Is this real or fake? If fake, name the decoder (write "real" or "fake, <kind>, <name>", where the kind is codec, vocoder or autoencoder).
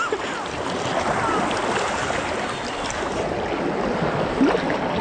real